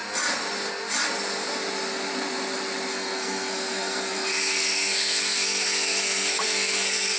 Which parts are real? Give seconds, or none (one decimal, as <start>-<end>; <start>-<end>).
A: 0.0-2.9